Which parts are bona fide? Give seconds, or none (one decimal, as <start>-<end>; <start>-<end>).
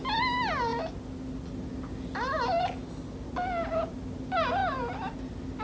0.0-5.6